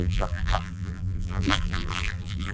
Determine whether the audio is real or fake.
fake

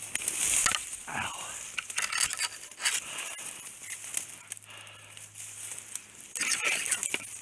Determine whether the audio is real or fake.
real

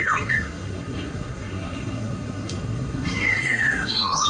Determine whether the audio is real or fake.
fake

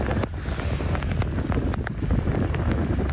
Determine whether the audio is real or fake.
real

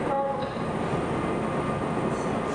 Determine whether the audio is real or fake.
real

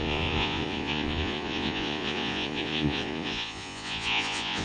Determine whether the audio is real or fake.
fake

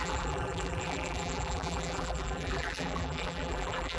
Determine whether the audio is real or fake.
fake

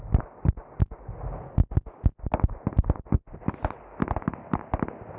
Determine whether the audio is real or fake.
real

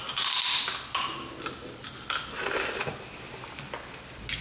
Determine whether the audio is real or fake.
real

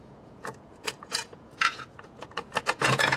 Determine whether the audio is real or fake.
fake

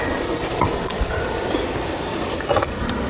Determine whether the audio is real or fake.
real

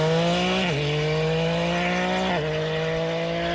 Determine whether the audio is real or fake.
real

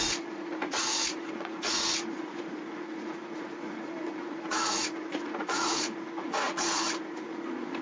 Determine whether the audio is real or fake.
fake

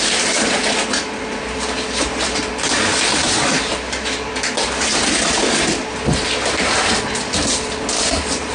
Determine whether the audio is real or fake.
real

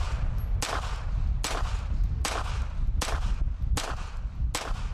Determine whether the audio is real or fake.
real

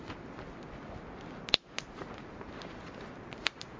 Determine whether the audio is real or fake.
real